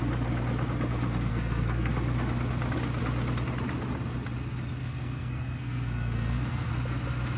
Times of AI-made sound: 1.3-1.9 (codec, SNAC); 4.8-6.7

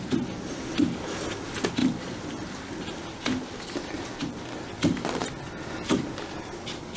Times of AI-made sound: 1.8-4.4 (vocoder, BigVGAN v2)

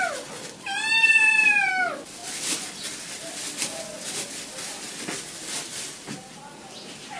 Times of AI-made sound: 0.0-1.7 (vocoder, BigVGAN v2); 2.2-6.5

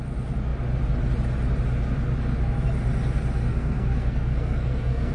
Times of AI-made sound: 3.5-5.1 (codec, SNAC)

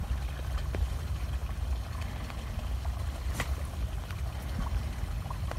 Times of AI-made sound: none

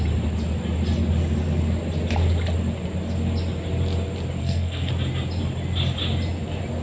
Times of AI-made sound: 4.4-4.9 (codec, SNAC)

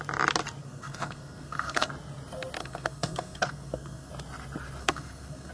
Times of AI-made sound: 0.6-1.9 (codec, SNAC); 2.6-4.1; 4.8-5.5

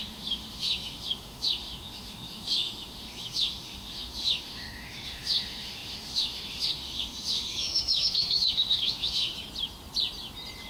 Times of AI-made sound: 0.0-9.3 (autoencoder, DAC-VAE)